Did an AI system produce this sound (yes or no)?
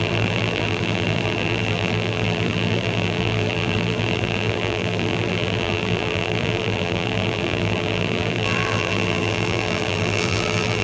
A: yes